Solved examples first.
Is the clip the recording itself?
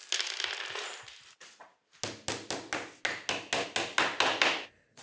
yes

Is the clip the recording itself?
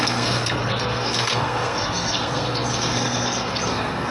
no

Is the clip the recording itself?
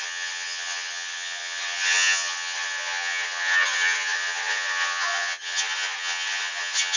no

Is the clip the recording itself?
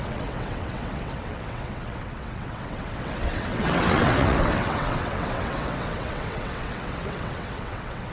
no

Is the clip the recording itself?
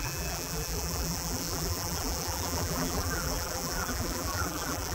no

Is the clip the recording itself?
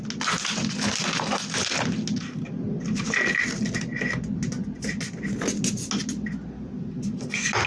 yes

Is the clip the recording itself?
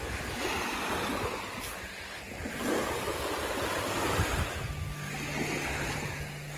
yes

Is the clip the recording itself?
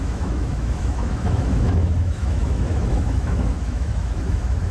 no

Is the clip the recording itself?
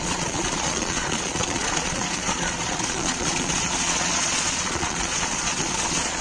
no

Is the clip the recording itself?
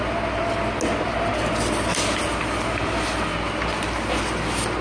yes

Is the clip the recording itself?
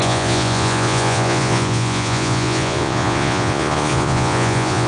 no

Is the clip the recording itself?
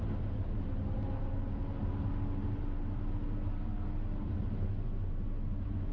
yes